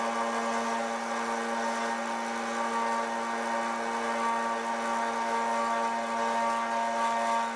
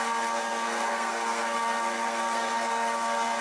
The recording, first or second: first